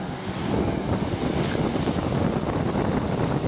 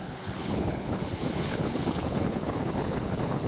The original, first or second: first